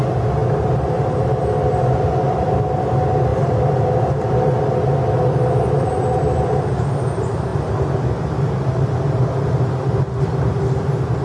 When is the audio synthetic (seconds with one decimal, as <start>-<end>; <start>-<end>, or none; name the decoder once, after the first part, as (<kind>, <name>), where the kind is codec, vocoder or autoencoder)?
none